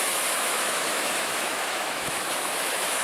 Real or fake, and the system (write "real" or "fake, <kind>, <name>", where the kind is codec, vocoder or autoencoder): fake, autoencoder, DAC-VAE